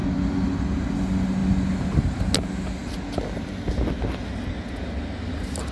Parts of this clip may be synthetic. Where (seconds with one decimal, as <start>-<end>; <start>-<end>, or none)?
none